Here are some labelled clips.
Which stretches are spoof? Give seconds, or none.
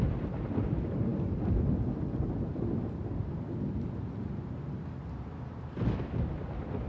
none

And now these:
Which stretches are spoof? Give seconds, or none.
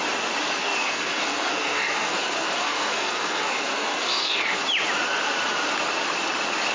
0.6-4.6